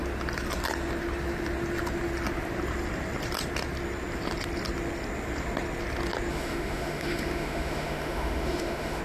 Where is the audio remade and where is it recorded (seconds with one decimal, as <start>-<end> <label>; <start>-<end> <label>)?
0.0-6.3 recorded; 6.3-9.0 remade